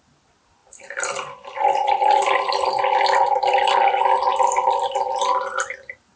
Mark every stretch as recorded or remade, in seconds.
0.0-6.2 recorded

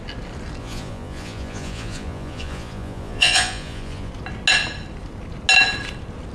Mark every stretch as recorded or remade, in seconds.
0.0-0.6 recorded; 0.6-4.1 remade; 4.1-6.3 recorded

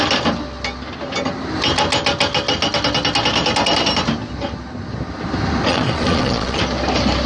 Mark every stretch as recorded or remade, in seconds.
0.0-5.7 recorded; 5.7-6.6 remade; 6.6-7.3 recorded

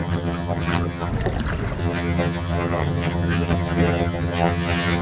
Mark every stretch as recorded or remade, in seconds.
0.0-1.1 remade; 1.1-1.8 recorded; 1.8-5.0 remade

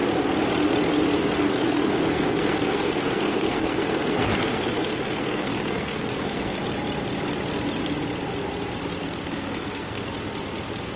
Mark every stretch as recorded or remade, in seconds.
0.0-1.5 recorded; 1.5-6.6 remade; 6.6-9.0 recorded; 9.0-10.1 remade; 10.1-11.0 recorded